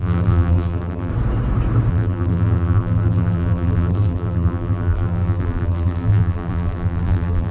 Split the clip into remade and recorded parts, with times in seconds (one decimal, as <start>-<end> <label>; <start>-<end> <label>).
0.0-1.1 remade; 1.1-1.9 recorded; 1.9-7.5 remade

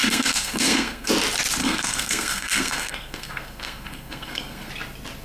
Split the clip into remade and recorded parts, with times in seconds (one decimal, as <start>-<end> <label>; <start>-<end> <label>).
0.0-1.1 remade; 1.1-1.6 recorded; 1.6-4.7 remade; 4.7-5.2 recorded

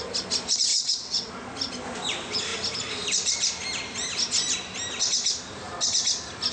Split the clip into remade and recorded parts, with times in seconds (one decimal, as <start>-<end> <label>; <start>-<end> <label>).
0.0-0.7 recorded; 0.7-1.3 remade; 1.3-6.5 recorded

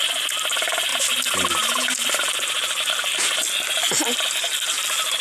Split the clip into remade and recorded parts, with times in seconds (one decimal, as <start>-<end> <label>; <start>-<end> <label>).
0.0-5.2 recorded

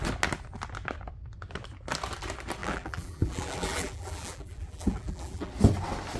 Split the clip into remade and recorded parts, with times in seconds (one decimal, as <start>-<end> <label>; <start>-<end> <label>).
0.0-2.6 recorded; 2.6-5.5 remade; 5.5-6.2 recorded